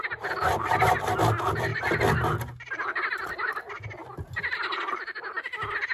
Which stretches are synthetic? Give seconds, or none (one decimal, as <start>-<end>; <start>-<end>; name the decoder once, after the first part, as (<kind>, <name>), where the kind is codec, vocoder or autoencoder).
none